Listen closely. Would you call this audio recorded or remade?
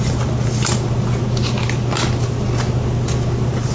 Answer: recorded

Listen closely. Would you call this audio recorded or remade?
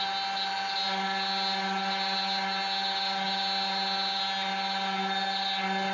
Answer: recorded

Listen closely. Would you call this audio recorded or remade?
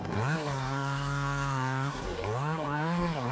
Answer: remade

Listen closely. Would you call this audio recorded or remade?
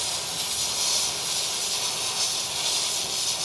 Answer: recorded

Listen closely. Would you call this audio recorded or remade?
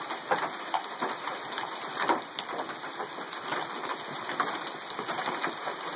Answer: recorded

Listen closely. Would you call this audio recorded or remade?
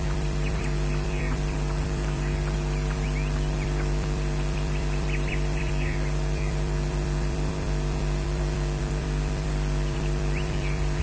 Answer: remade